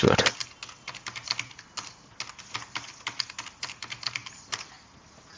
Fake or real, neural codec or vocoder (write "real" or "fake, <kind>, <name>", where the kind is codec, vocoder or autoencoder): real